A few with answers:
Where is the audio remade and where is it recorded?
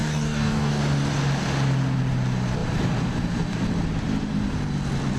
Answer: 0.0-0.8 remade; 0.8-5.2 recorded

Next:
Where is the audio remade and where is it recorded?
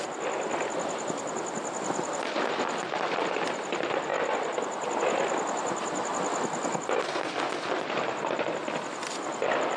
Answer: 0.0-9.8 recorded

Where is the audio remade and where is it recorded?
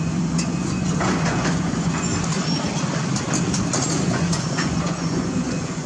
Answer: 0.0-2.1 remade; 2.1-3.9 recorded; 3.9-5.9 remade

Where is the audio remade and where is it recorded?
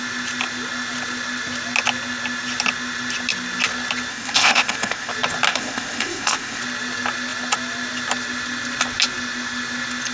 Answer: 0.0-4.1 recorded; 4.1-5.1 remade; 5.1-5.5 recorded; 5.5-6.6 remade; 6.6-10.1 recorded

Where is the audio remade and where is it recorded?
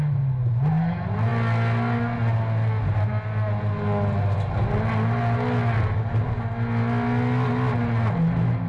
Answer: 0.0-8.7 recorded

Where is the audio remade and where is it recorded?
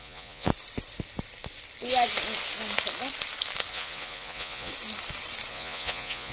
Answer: 0.0-0.5 remade; 0.5-3.7 recorded; 3.7-4.7 remade; 4.7-5.5 recorded; 5.5-6.3 remade